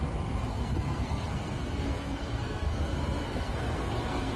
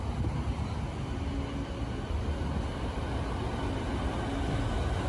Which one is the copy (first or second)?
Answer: first